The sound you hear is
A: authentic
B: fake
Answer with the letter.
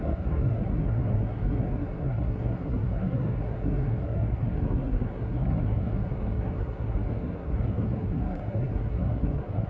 B